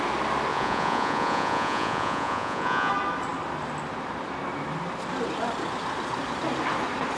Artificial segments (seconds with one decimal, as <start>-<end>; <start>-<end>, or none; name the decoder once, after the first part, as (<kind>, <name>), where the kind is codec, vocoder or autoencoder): 0.5-2.9 (vocoder, Vocos)